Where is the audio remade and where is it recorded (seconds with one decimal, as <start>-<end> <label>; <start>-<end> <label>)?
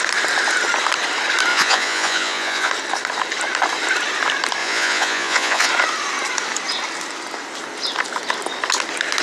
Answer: 0.0-1.5 recorded; 1.5-2.7 remade; 2.7-4.6 recorded; 4.6-5.7 remade; 5.7-9.2 recorded